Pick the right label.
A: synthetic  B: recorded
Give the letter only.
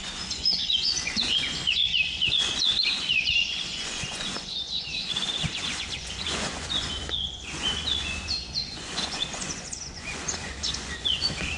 A